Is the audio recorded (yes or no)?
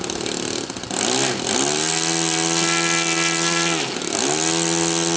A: yes